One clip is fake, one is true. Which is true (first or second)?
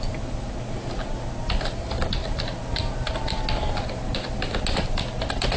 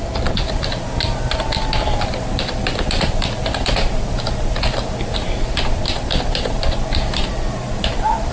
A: first